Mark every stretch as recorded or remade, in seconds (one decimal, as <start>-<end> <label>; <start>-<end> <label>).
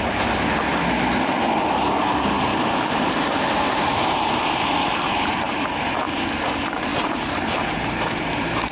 0.0-2.5 recorded; 2.5-6.3 remade; 6.3-6.9 recorded; 6.9-8.7 remade